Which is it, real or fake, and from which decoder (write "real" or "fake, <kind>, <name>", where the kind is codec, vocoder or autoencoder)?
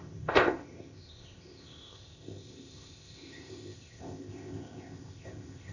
fake, codec, ZipCodec